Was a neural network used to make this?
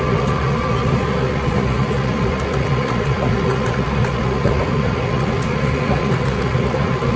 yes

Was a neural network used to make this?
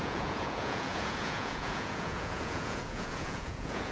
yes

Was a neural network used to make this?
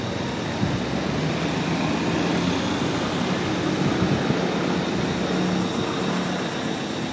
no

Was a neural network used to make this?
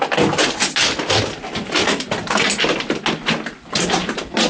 no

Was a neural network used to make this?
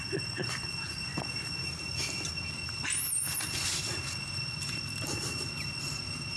no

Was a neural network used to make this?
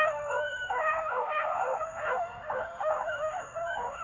yes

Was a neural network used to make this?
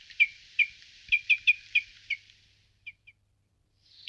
yes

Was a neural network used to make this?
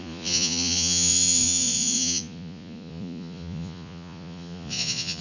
yes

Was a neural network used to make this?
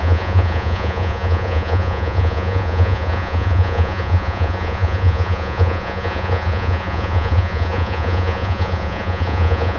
yes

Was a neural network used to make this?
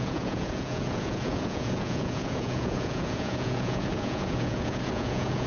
yes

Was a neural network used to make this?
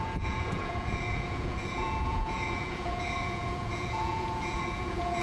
yes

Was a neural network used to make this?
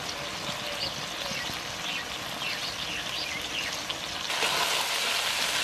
no